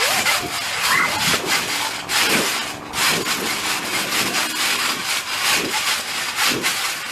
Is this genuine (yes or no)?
yes